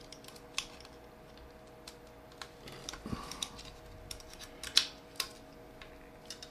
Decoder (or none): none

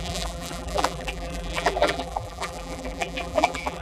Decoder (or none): vocoder, BigVGAN v2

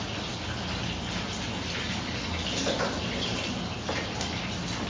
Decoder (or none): none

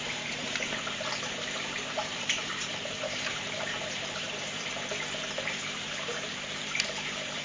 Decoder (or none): vocoder, BigVGAN v2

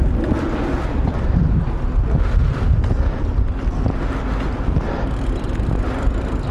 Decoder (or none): none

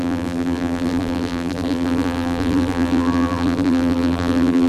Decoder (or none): vocoder, BigVGAN v2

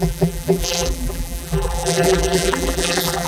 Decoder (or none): vocoder, BigVGAN v2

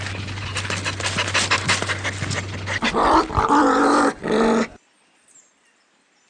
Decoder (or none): none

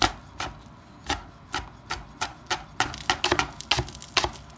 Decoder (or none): none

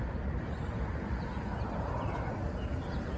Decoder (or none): none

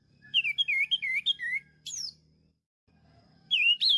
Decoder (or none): vocoder, BigVGAN v2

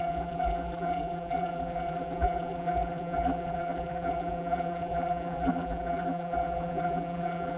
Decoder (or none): vocoder, BigVGAN v2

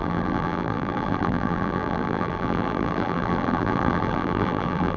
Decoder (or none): vocoder, BigVGAN v2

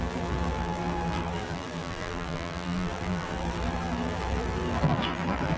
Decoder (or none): vocoder, BigVGAN v2